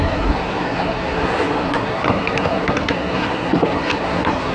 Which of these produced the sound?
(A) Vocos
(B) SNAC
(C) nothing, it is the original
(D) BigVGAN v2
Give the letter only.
B